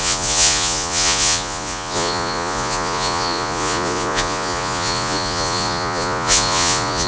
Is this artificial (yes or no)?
yes